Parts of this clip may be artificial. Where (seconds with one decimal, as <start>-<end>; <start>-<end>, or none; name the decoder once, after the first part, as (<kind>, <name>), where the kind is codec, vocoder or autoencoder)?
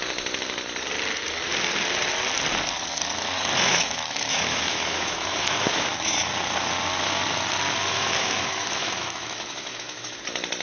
3.7-6.3 (autoencoder, DAC-VAE); 7.9-10.2